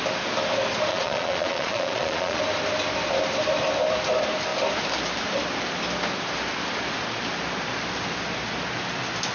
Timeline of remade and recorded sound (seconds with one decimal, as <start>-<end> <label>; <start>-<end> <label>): 0.0-0.9 recorded; 0.9-2.4 remade; 2.4-9.3 recorded